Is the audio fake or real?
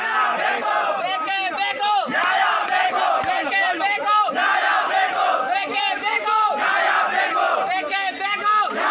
real